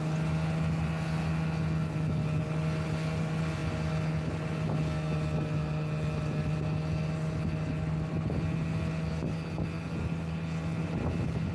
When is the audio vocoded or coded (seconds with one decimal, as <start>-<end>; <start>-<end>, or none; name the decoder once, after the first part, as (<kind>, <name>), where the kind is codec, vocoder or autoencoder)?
none